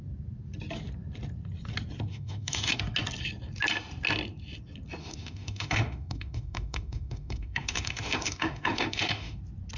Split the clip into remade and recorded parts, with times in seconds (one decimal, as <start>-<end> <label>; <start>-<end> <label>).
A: 0.0-2.1 recorded; 2.1-2.8 remade; 2.8-5.0 recorded; 5.0-9.4 remade; 9.4-9.8 recorded